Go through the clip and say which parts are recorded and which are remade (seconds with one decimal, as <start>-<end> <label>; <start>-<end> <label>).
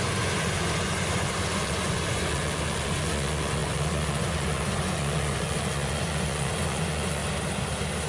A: 0.0-7.2 remade; 7.2-8.1 recorded